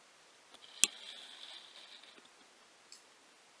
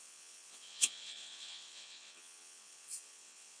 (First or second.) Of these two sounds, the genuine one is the first